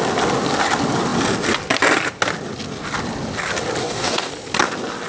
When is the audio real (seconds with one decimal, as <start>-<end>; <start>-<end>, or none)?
0.0-3.8; 4.3-5.1